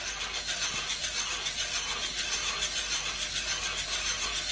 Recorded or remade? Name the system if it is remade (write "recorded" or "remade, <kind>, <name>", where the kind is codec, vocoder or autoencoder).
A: recorded